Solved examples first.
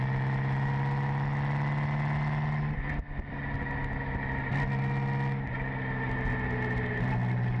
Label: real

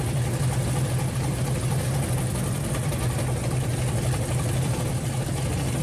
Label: real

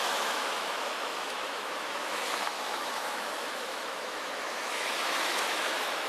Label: fake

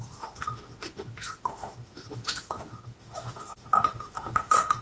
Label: fake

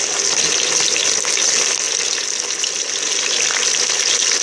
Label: real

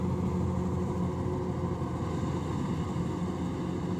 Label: real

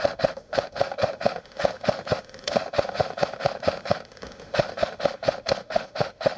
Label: fake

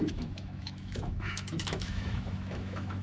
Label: fake